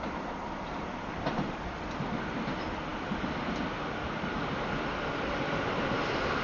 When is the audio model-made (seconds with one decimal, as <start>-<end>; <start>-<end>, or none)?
none